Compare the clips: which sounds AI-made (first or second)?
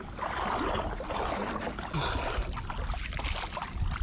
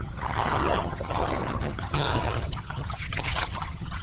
second